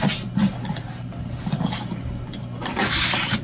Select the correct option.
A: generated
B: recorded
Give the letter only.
B